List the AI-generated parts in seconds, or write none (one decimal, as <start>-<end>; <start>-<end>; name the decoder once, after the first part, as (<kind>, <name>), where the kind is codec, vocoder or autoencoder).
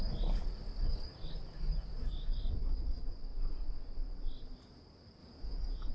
5.2-5.9 (vocoder, Vocos)